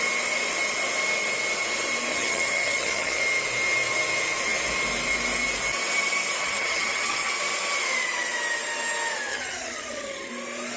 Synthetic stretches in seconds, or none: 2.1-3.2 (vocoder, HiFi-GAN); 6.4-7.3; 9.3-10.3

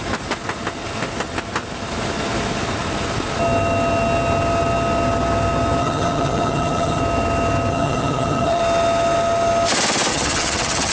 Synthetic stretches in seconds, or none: 5.8-7.0 (vocoder, HiFi-GAN); 7.7-8.6; 10.1-10.9

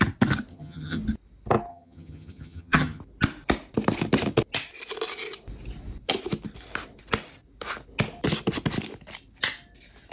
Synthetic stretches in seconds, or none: 0.5-1.0 (vocoder, HiFi-GAN); 1.7-3.0